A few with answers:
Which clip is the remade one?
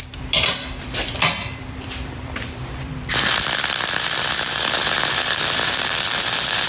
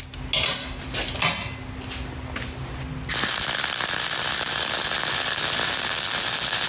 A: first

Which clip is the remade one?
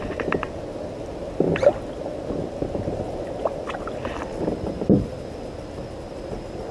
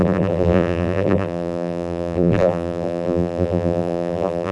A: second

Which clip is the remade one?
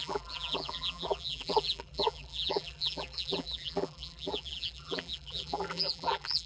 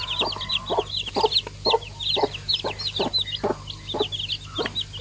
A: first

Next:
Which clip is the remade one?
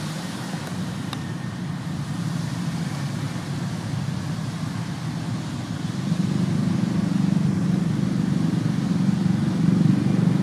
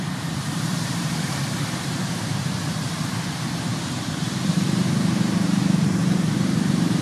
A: second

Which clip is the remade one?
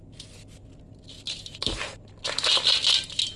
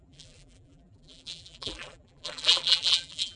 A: second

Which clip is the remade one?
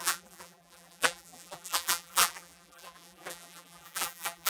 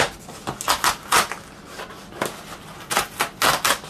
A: first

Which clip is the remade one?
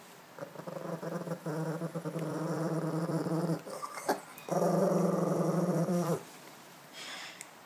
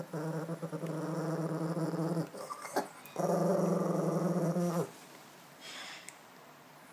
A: first